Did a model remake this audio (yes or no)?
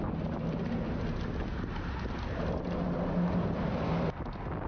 no